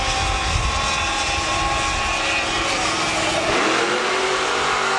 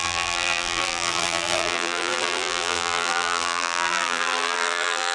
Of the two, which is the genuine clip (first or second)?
first